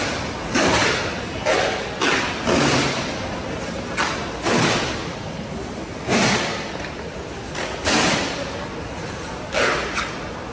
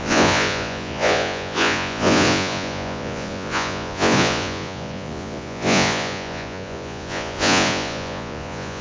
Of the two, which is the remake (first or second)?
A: second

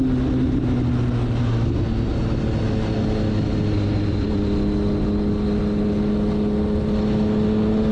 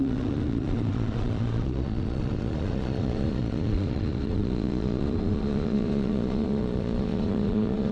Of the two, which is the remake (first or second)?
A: second